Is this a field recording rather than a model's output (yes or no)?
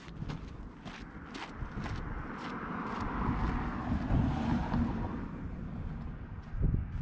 yes